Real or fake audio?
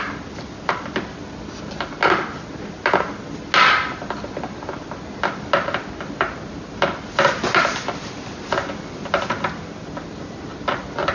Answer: real